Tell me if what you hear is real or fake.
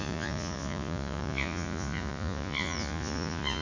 fake